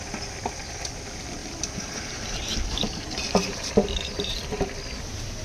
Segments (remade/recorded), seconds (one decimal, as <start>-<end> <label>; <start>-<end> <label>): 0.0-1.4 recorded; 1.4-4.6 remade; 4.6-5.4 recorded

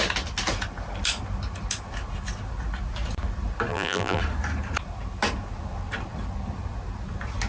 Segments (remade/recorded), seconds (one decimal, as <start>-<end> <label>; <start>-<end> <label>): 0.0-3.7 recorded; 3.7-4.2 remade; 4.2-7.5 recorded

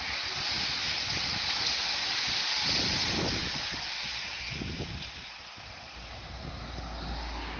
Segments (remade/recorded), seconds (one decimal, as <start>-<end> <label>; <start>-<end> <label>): 0.0-2.4 recorded; 2.4-6.5 remade; 6.5-7.6 recorded

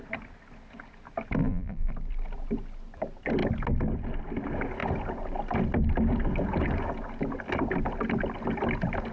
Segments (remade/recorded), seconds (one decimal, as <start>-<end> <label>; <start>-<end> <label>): 0.0-1.4 recorded; 1.4-1.9 remade; 1.9-9.1 recorded

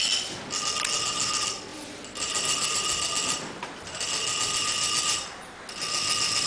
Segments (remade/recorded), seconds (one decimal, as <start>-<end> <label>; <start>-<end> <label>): 0.0-1.7 recorded; 1.7-5.6 remade; 5.6-6.5 recorded

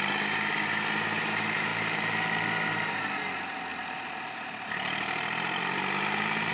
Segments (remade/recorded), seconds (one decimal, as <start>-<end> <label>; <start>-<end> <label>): 0.0-1.7 recorded; 1.7-2.7 remade; 2.7-3.7 recorded; 3.7-6.5 remade